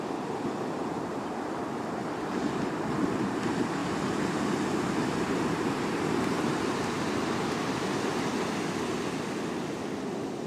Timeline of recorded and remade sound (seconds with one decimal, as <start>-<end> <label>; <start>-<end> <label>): 0.0-3.8 recorded; 3.8-6.9 remade; 6.9-10.5 recorded